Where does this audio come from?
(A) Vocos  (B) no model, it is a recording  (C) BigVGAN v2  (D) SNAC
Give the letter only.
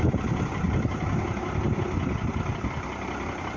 B